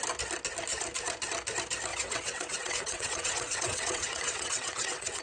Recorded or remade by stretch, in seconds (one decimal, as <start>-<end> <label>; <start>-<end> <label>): 0.0-1.9 recorded; 1.9-5.2 remade